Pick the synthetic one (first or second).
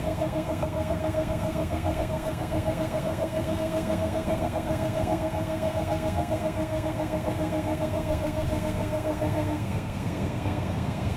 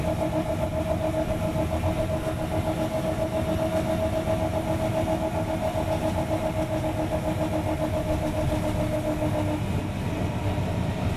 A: first